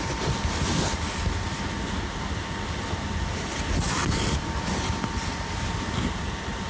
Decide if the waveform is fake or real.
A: real